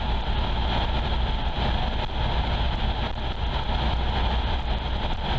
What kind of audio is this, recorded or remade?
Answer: recorded